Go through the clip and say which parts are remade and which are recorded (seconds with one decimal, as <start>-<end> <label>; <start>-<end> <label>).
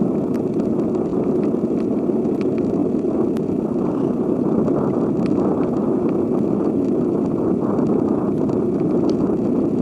0.0-9.8 recorded